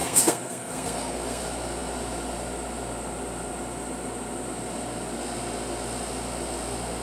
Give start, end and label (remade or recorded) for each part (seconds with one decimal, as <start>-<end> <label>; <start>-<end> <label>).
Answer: 0.0-1.4 remade; 1.4-7.0 recorded